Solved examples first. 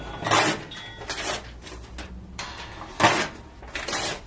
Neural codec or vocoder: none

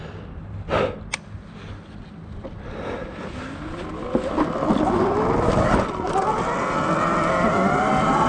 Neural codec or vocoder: none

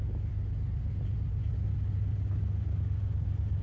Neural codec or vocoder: none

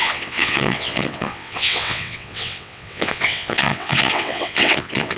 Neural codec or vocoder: vocoder, WaveNeXt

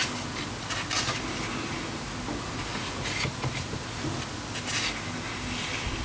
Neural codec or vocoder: none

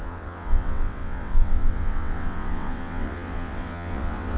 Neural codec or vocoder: vocoder, WaveNeXt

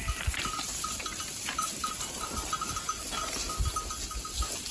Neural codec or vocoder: none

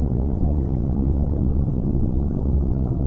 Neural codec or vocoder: vocoder, WaveNeXt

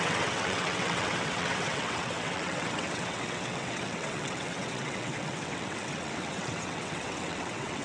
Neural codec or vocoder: vocoder, WaveNeXt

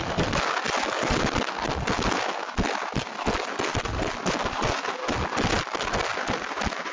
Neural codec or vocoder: none